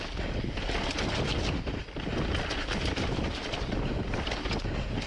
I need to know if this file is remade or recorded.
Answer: recorded